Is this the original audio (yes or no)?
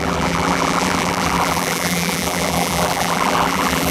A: no